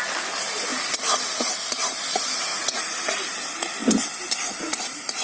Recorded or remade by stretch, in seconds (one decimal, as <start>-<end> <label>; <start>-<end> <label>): 0.0-2.5 recorded; 2.5-3.1 remade; 3.1-5.2 recorded